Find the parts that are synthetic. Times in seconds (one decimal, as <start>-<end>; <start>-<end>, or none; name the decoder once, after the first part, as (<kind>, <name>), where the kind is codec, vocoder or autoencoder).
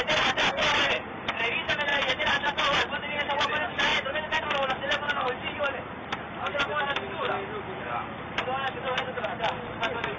none